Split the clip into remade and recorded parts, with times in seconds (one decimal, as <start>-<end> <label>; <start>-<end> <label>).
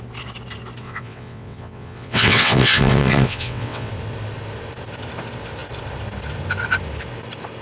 0.0-0.8 recorded; 0.8-3.9 remade; 3.9-7.6 recorded